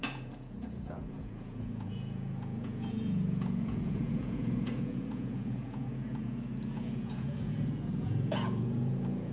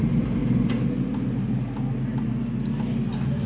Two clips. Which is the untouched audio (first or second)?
second